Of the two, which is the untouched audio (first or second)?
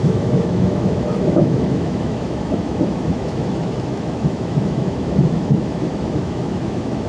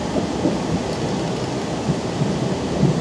second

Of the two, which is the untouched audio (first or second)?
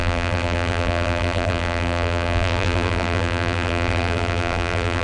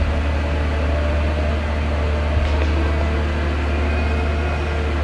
second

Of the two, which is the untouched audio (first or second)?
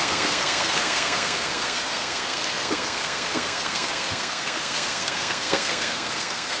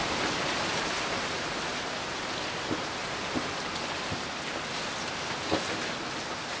second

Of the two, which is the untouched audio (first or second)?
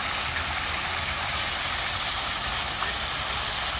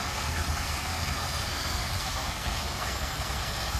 first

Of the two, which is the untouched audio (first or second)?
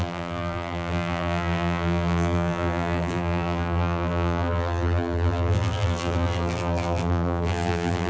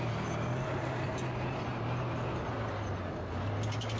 second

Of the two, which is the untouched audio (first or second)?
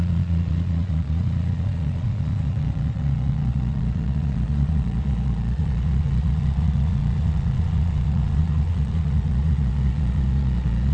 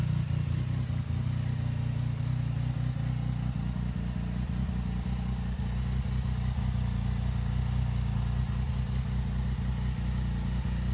second